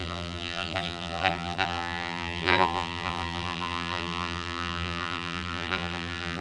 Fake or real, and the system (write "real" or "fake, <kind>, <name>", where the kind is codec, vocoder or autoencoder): fake, vocoder, BigVGAN v2